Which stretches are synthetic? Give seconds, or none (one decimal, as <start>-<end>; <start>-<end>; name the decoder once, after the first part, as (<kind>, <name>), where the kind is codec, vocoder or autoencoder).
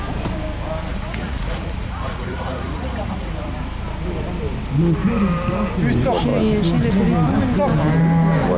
0.9-3.3 (vocoder, Vocos)